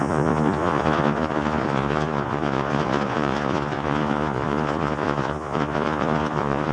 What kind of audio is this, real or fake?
fake